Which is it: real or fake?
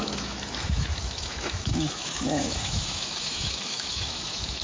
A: fake